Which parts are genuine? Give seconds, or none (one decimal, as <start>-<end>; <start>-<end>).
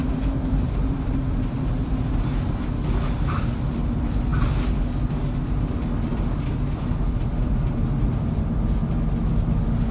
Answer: 1.6-9.9